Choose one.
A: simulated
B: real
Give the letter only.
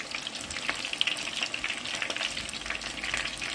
B